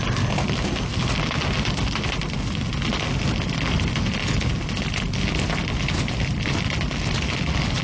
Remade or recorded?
recorded